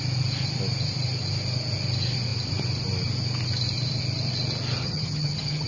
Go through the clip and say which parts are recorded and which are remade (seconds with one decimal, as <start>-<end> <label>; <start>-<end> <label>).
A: 0.0-4.8 recorded; 4.8-5.7 remade